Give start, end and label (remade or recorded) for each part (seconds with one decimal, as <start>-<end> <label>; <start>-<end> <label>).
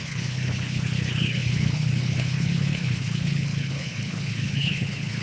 0.0-5.2 remade